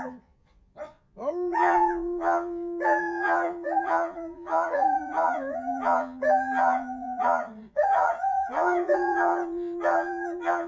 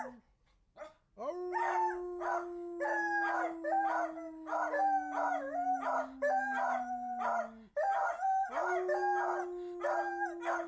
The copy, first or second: first